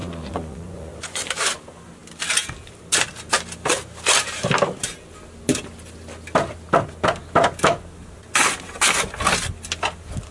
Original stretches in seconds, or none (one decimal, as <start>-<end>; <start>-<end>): 1.3-10.3

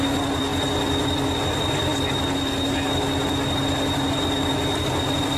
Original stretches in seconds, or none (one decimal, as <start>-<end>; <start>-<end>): 0.5-1.4; 1.9-4.8

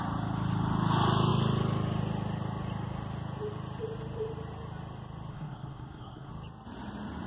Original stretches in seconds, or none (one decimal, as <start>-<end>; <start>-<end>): 0.0-5.3; 6.3-7.3

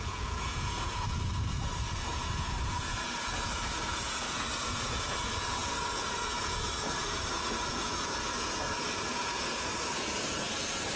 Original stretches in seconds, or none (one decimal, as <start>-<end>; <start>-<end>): none

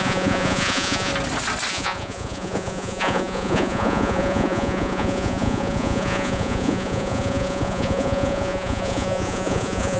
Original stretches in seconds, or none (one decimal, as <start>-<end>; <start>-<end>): 1.1-1.7

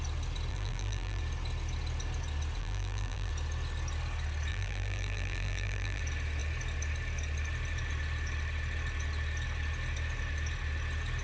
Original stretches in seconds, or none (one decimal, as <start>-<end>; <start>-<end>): 0.0-0.5; 1.2-2.6; 3.3-4.5; 6.0-11.2